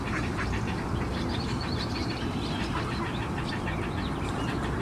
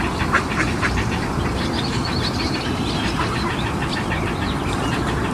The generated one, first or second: second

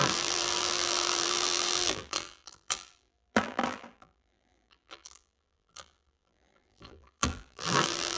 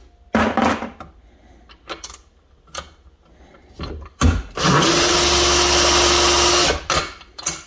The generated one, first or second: first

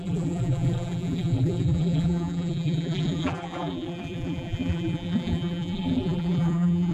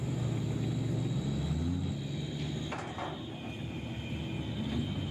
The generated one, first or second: first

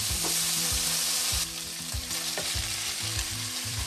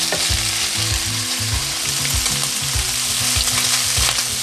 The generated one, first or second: first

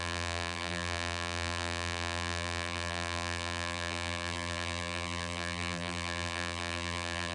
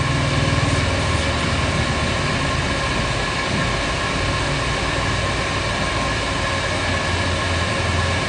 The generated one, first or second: first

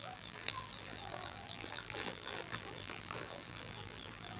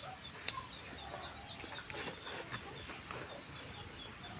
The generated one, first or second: first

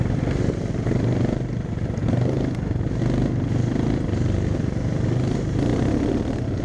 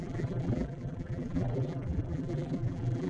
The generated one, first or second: second